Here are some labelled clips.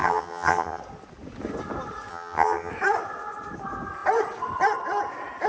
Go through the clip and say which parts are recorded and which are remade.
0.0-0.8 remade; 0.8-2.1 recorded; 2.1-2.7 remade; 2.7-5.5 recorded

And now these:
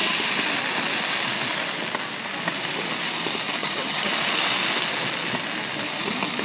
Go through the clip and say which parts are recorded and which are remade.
0.0-3.6 recorded; 3.6-4.1 remade; 4.1-6.4 recorded

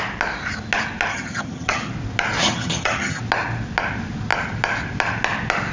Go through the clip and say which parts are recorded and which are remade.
0.0-1.1 recorded; 1.1-1.9 remade; 1.9-2.4 recorded; 2.4-3.2 remade; 3.2-5.7 recorded

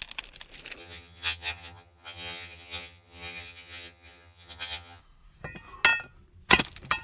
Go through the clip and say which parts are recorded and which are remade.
0.0-0.8 recorded; 0.8-5.0 remade; 5.0-7.0 recorded

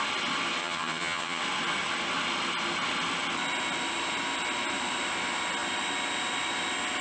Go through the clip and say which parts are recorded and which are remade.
0.0-0.6 recorded; 0.6-1.4 remade; 1.4-7.0 recorded

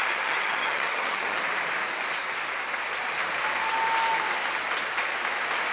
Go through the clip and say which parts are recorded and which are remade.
0.0-1.4 remade; 1.4-5.7 recorded

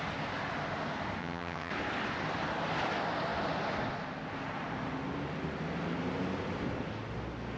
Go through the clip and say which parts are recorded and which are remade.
0.0-1.2 recorded; 1.2-1.7 remade; 1.7-7.6 recorded

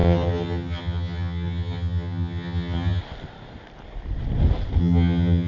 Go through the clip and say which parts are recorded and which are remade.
0.0-3.0 remade; 3.0-4.8 recorded; 4.8-5.5 remade